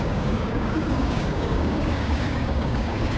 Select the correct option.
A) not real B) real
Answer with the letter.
A